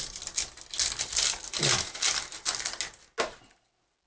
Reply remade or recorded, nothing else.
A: recorded